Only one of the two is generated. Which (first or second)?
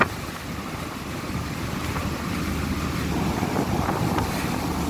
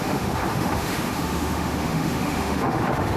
second